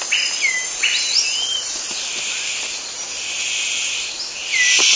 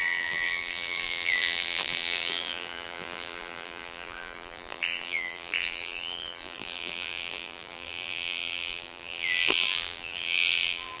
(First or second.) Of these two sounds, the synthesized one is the second